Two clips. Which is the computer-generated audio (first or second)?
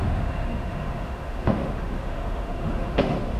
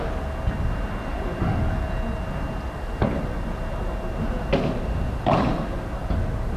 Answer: first